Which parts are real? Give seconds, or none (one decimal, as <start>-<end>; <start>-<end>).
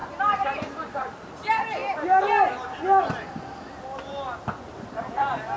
1.3-5.6